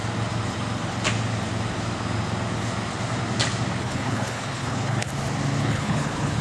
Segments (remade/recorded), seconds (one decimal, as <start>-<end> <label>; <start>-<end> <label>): 0.0-3.8 recorded; 3.8-5.1 remade; 5.1-5.6 recorded; 5.6-6.4 remade